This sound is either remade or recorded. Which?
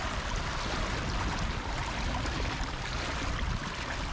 recorded